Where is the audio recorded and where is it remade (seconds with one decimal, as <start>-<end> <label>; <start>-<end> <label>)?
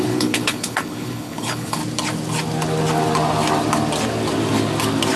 0.0-1.8 remade; 1.8-5.2 recorded